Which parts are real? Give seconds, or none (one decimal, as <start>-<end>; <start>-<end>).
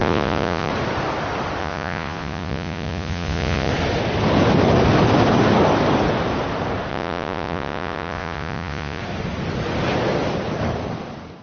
0.7-1.6; 3.7-6.9; 9.0-11.4